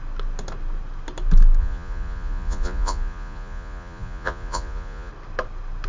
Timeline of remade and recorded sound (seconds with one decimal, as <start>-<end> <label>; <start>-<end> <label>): 0.0-1.6 recorded; 1.6-5.1 remade; 5.1-5.9 recorded